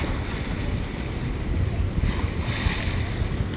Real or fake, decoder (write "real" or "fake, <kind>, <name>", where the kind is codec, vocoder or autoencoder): real